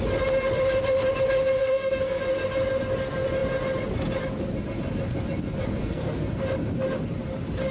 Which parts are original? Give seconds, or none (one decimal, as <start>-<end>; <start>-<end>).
0.0-1.6; 2.2-5.8; 6.4-7.7